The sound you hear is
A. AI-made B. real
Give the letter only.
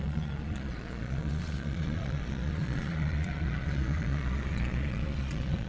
A